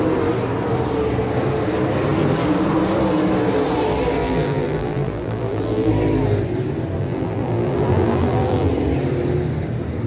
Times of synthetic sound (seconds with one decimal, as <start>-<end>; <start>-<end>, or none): 4.2-5.9; 7.0-8.7